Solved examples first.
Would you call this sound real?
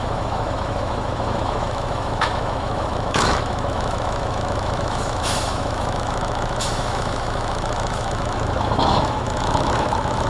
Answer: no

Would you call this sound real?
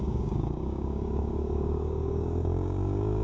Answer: no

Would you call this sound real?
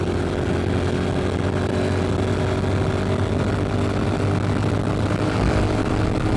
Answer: yes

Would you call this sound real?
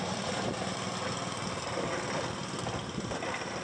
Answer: yes